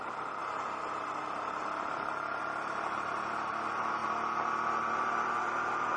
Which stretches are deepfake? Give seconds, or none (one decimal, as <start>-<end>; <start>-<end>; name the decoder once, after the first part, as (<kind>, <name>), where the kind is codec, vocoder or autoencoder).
none